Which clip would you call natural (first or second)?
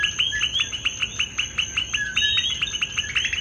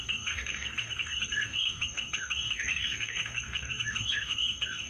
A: first